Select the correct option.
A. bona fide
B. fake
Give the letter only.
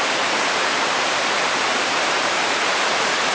B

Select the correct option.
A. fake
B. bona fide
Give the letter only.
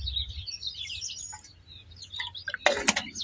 B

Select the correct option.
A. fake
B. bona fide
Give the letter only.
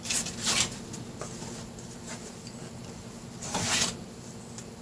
B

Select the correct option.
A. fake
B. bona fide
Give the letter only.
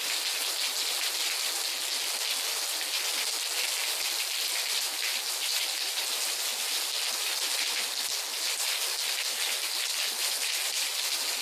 B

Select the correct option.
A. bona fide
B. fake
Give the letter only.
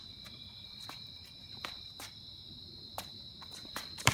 B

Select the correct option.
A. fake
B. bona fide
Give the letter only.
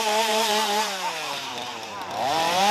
A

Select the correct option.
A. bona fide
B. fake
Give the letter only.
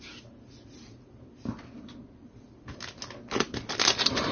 A